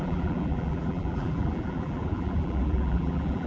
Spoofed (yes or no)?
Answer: yes